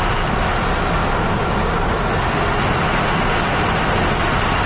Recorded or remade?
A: recorded